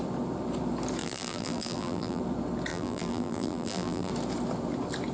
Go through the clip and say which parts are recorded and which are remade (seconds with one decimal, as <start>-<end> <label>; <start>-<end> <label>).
0.0-1.0 recorded; 1.0-2.2 remade; 2.2-2.7 recorded; 2.7-4.1 remade; 4.1-5.1 recorded